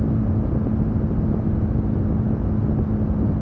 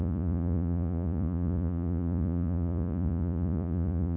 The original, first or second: first